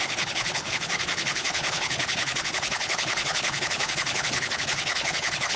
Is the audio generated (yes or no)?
yes